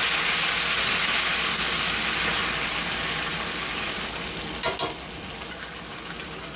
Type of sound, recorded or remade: recorded